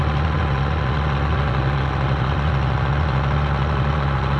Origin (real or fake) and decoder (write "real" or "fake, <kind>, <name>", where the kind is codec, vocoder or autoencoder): fake, vocoder, Vocos